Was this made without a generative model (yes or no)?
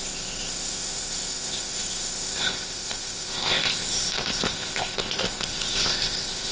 no